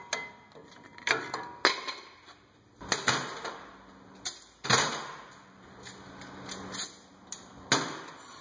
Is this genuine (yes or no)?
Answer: yes